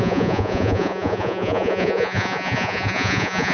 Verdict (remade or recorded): remade